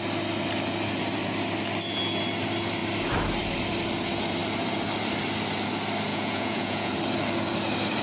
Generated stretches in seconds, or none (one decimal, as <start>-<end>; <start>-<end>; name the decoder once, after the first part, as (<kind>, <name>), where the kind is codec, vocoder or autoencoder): 6.1-6.9 (vocoder, Vocos)